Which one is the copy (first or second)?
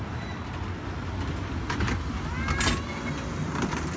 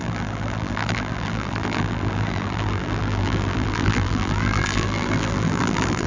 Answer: second